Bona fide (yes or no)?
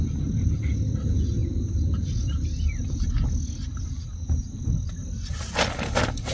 yes